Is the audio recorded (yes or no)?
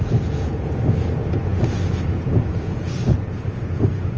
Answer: no